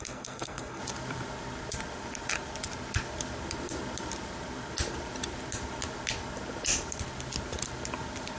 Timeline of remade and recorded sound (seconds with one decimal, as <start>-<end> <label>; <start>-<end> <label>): 0.0-0.8 remade; 0.8-8.4 recorded

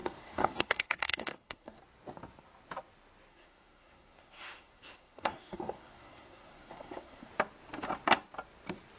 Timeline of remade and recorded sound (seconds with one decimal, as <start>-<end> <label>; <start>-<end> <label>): 0.0-1.8 remade; 1.8-3.3 recorded; 3.3-7.3 remade; 7.3-9.0 recorded

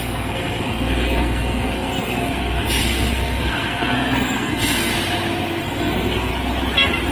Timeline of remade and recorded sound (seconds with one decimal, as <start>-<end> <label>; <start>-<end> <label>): 0.0-4.9 remade; 4.9-5.6 recorded; 5.6-6.3 remade; 6.3-7.1 recorded